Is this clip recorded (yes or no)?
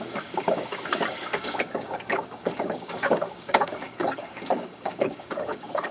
no